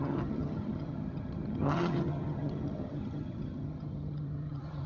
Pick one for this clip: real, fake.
fake